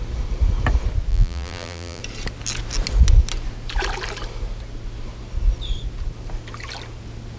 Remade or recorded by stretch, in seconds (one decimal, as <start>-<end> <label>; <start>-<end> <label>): 0.0-1.1 recorded; 1.1-2.0 remade; 2.0-7.4 recorded